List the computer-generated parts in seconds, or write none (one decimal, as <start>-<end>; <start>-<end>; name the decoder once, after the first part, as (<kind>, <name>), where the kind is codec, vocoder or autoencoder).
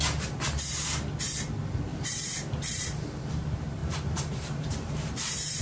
1.9-3.4 (vocoder, BigVGAN v2); 3.8-5.6